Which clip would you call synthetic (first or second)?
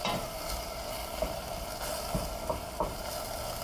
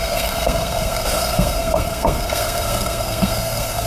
second